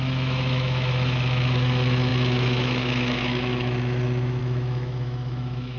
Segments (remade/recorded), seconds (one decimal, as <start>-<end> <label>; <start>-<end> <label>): 0.0-5.8 remade